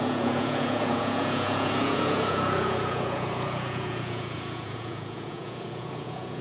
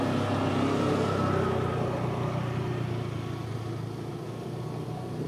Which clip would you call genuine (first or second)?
second